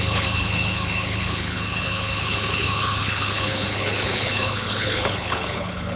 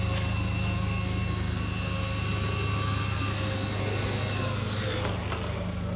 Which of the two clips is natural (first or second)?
second